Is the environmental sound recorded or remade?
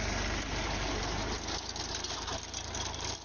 recorded